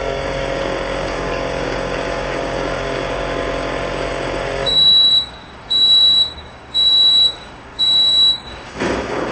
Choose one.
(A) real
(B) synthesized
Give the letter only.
B